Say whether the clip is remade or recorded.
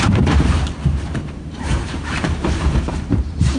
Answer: remade